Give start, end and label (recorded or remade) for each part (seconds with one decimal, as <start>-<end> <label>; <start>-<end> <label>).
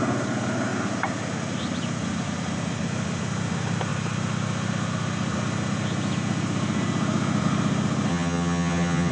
0.0-8.1 recorded; 8.1-9.1 remade